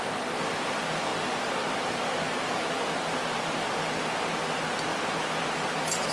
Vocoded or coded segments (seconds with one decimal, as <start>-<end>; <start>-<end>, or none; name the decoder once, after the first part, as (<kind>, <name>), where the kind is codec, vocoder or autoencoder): none